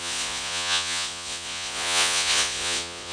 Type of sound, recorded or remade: remade